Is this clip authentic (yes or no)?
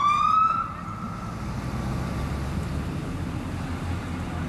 yes